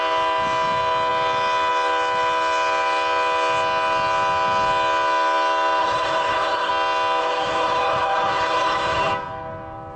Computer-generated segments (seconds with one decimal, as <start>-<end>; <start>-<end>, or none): 5.8-6.7; 7.2-9.1